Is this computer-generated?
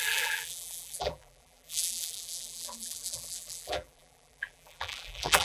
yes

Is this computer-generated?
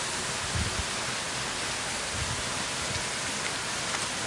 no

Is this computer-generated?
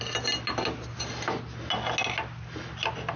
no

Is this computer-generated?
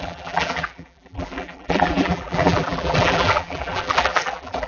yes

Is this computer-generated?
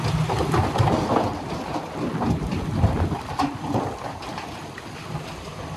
no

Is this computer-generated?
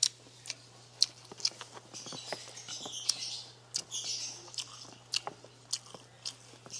no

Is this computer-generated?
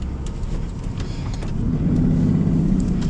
no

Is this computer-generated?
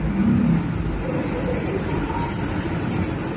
no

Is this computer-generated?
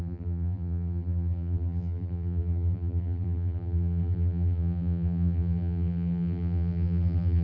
yes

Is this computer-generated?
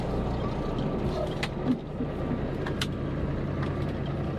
no